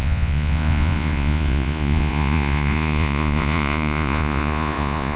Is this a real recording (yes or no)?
no